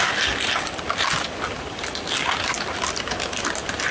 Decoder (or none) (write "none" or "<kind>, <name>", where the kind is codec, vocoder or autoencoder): none